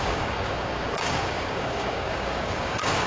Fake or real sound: fake